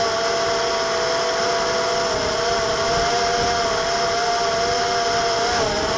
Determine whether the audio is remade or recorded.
recorded